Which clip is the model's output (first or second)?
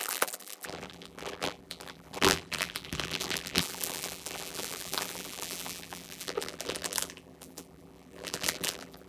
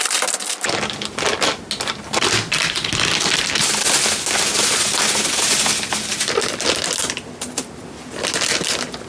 first